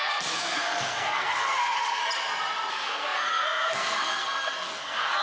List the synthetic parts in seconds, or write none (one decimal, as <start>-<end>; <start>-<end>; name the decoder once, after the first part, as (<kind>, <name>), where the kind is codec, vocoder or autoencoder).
0.0-2.0 (codec, SNAC); 2.7-5.2